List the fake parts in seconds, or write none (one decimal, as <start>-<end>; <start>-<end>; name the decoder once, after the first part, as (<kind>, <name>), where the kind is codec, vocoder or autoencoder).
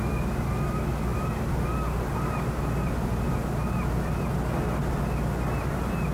none